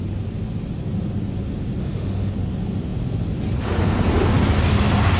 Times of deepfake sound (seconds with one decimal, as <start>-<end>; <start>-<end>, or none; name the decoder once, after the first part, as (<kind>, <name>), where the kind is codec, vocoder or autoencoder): 1.8-2.3 (autoencoder, DAC-VAE)